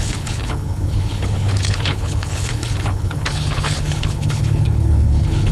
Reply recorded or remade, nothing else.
remade